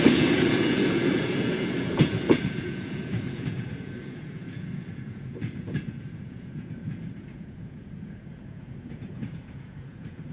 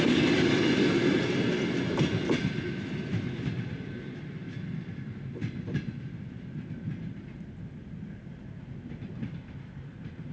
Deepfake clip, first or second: first